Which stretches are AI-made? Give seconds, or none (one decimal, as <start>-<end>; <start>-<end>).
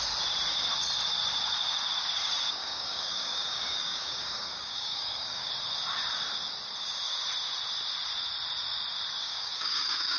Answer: 2.6-5.5; 9.2-10.2